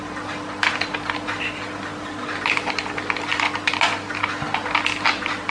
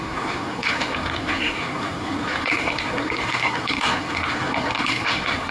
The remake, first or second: second